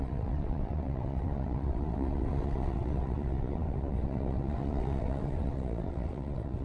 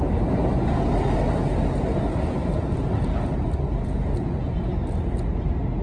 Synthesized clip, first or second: first